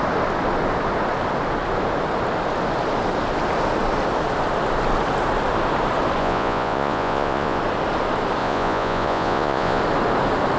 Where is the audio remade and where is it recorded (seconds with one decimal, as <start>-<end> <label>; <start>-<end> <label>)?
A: 0.0-6.2 recorded; 6.2-7.6 remade; 7.6-8.4 recorded; 8.4-9.8 remade; 9.8-10.6 recorded